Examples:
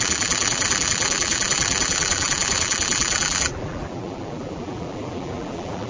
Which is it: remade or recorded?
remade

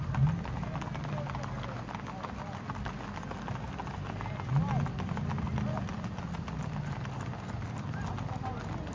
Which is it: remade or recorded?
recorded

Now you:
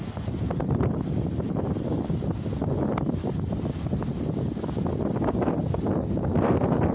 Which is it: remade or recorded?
recorded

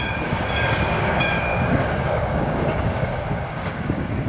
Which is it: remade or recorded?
remade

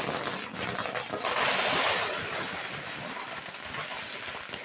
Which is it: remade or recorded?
recorded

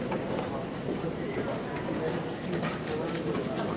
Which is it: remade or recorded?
recorded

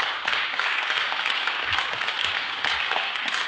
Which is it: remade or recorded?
remade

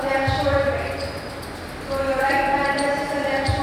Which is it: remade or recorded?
recorded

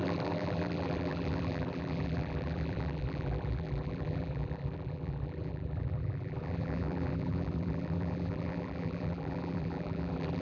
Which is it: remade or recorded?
remade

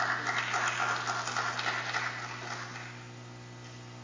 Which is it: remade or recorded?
recorded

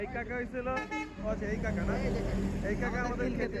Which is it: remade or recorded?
recorded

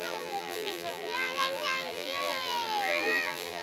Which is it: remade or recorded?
remade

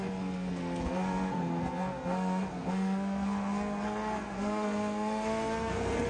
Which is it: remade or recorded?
remade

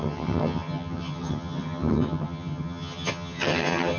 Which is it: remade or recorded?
remade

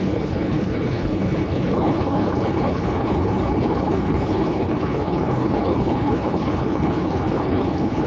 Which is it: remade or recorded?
remade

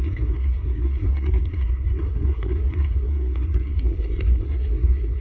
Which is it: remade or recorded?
remade